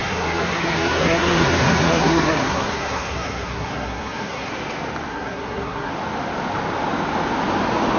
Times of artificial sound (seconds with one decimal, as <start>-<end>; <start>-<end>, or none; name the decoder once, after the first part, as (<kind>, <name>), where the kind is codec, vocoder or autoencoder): 0.0-4.5 (codec, SNAC); 5.1-5.9